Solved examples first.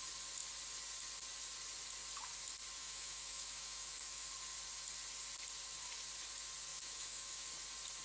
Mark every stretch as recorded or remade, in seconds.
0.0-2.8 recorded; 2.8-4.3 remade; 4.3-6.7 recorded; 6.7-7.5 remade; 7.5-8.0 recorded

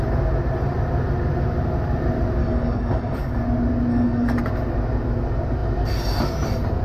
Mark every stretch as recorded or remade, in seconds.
0.0-2.4 recorded; 2.4-3.4 remade; 3.4-3.9 recorded; 3.9-4.4 remade; 4.4-6.8 recorded